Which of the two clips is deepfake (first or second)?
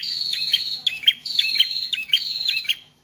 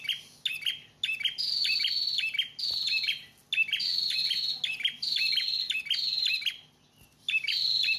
first